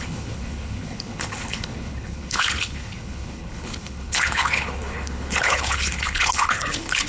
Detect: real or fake fake